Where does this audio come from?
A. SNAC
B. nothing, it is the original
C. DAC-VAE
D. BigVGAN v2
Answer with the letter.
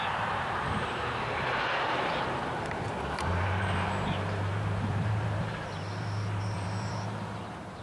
D